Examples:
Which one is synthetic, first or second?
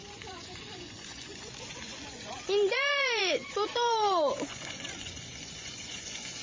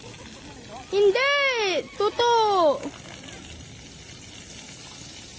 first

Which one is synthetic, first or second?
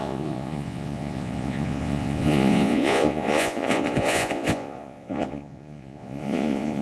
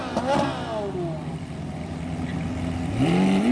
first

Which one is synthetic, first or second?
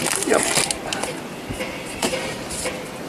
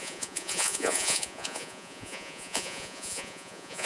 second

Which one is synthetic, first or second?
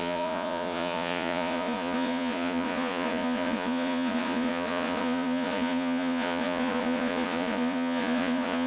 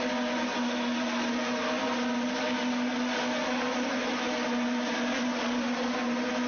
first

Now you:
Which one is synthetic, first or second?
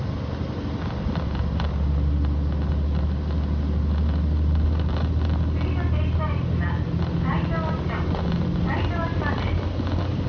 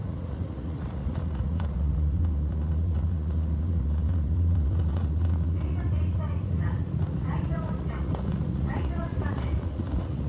second